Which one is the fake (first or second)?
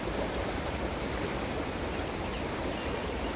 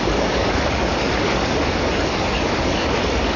second